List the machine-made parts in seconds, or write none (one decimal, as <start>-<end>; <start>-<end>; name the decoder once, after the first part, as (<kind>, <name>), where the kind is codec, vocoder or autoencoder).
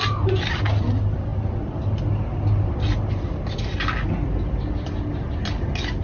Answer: none